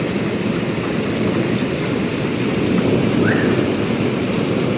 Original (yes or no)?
yes